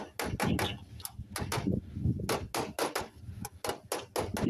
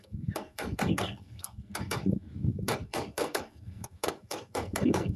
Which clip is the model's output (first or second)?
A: second